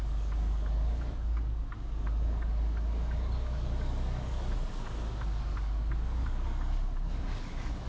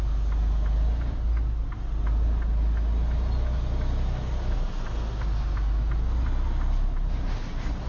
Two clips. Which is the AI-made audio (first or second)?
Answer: first